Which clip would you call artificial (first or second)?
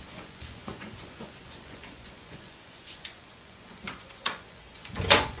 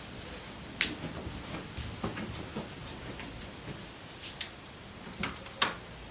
first